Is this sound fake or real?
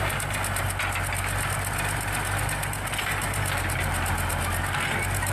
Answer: real